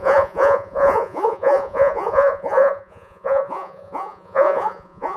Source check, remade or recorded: remade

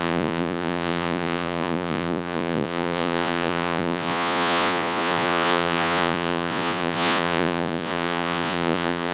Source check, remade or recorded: remade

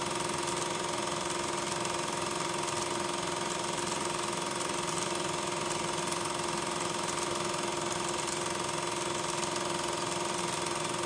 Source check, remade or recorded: recorded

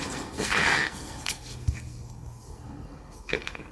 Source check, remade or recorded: remade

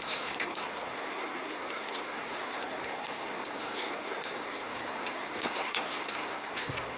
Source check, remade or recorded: remade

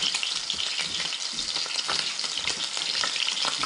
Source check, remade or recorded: recorded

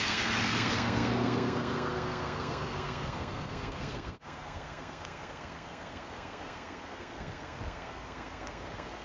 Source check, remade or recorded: remade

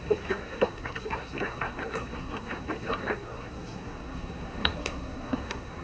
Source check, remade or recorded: remade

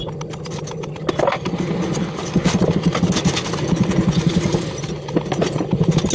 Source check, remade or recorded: recorded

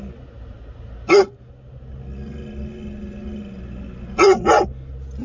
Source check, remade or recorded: recorded